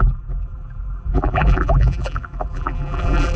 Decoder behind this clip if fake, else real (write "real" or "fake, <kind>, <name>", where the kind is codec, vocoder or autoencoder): fake, vocoder, BigVGAN v2